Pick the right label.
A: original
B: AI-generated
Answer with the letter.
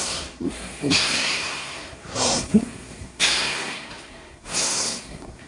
B